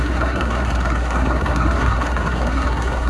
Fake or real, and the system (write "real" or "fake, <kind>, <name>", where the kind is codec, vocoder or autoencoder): fake, codec, SNAC